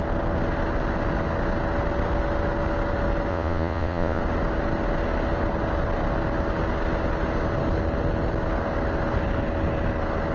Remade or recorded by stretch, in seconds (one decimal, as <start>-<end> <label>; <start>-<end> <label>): 0.0-3.3 recorded; 3.3-4.2 remade; 4.2-10.3 recorded